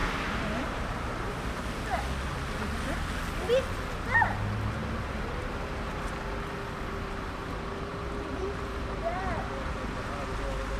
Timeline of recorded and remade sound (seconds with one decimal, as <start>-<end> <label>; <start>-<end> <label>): 0.0-2.0 remade; 2.0-7.9 recorded; 7.9-9.2 remade; 9.2-10.8 recorded